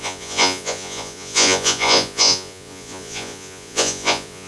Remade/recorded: remade